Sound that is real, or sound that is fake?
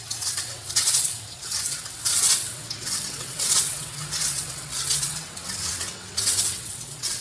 fake